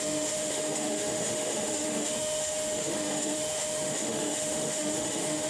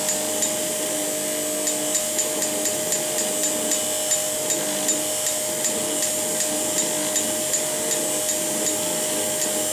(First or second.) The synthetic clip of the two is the first